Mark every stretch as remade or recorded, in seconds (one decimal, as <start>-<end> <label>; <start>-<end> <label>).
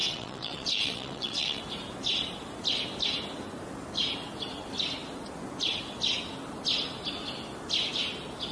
0.0-1.6 remade; 1.6-8.5 recorded